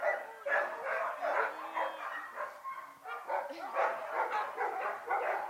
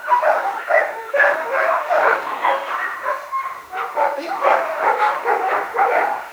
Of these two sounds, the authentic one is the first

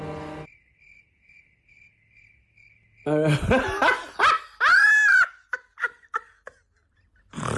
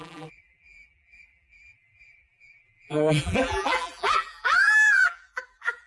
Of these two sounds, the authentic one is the first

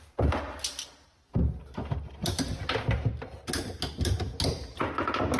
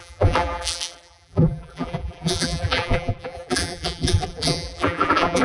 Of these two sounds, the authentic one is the first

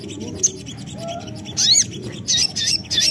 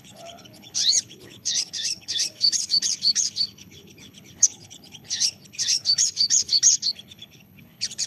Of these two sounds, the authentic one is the first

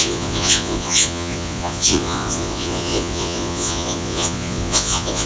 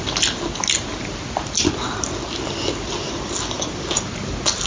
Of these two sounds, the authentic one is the second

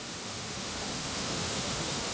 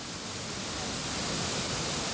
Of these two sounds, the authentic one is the second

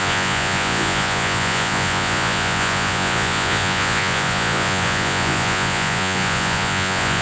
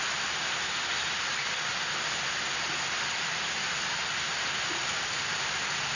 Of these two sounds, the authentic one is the second